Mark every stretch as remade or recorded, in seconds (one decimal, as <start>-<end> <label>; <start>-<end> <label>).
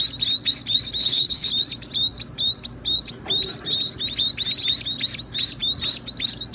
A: 0.0-1.0 recorded; 1.0-1.5 remade; 1.5-6.5 recorded